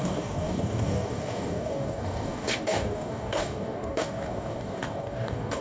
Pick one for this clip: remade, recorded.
remade